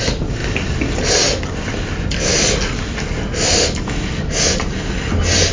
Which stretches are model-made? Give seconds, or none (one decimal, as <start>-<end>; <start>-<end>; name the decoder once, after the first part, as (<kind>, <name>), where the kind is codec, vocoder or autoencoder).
none